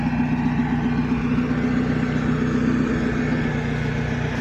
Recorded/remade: recorded